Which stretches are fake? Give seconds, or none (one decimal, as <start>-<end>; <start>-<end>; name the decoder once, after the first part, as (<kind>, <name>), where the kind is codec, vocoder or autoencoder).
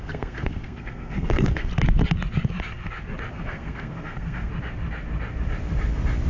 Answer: 0.0-1.7 (codec, SNAC); 3.3-4.5